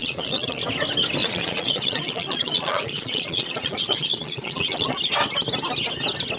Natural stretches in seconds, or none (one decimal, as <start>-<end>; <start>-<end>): 0.6-1.2; 5.0-6.4